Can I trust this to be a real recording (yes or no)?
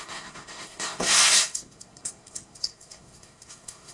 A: no